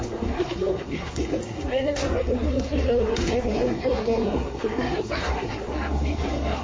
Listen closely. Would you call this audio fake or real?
fake